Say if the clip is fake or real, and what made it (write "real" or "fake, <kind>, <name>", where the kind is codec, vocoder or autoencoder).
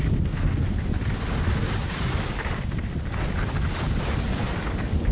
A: real